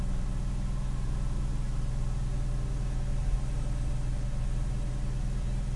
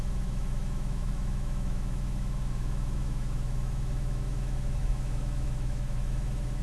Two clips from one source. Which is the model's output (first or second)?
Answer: second